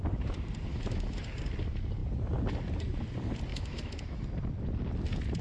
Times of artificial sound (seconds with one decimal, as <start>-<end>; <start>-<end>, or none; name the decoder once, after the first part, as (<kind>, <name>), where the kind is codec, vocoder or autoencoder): 0.7-1.2 (autoencoder, DAC-VAE); 3.5-4.2